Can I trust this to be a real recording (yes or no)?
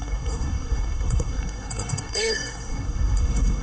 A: no